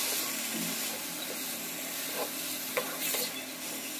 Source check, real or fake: real